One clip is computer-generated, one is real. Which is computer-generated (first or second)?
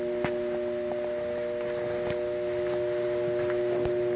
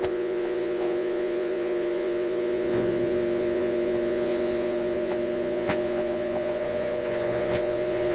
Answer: second